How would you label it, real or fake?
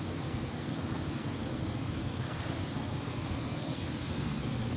fake